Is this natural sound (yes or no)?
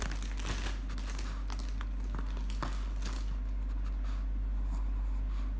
yes